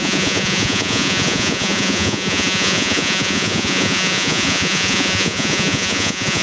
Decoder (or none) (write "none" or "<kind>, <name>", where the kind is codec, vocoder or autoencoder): vocoder, Vocos